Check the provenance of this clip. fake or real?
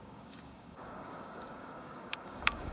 fake